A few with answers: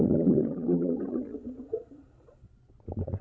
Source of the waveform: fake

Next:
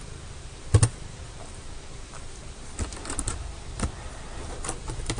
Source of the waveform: real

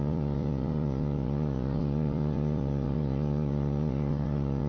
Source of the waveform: fake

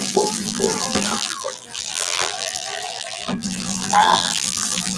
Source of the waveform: fake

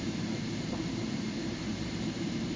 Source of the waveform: fake